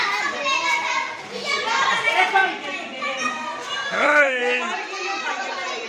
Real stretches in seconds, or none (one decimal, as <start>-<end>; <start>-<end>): 2.4-3.0; 4.4-5.3